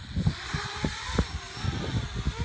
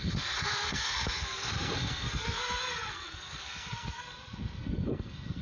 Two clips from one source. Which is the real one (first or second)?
first